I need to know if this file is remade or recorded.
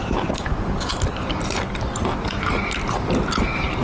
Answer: recorded